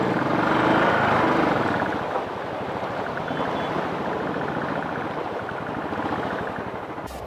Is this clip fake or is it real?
real